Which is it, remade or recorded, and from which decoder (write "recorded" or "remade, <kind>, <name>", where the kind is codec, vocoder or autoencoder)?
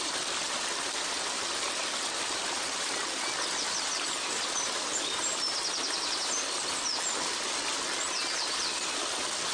recorded